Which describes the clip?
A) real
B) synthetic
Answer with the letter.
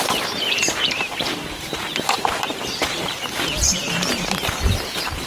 B